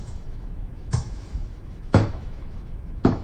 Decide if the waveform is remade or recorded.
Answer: remade